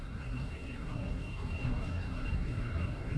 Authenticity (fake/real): fake